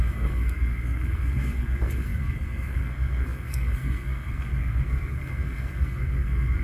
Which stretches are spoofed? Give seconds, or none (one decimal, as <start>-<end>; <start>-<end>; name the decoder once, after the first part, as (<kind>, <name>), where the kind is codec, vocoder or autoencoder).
0.0-6.6 (codec, SNAC)